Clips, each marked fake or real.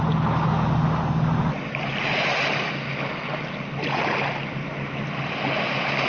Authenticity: real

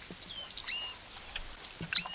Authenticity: real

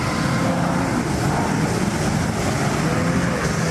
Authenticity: real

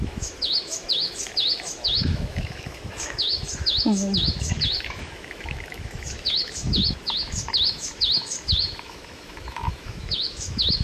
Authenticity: fake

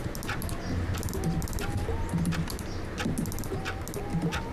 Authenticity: real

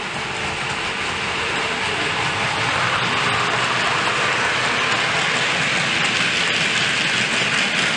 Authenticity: real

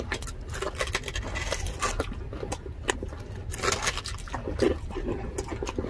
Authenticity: real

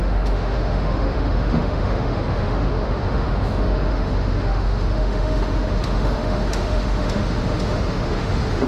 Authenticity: fake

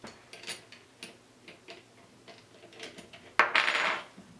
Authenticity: real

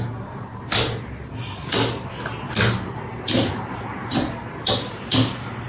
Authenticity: real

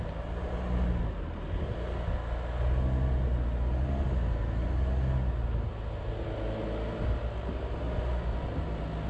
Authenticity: real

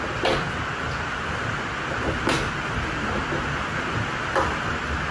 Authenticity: real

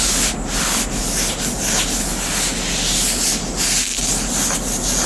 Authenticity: real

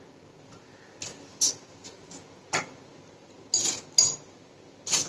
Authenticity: real